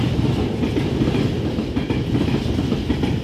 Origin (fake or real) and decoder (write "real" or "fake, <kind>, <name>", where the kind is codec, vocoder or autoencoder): real